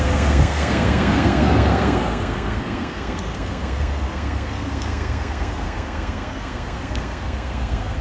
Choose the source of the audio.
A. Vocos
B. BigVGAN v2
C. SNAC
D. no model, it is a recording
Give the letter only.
C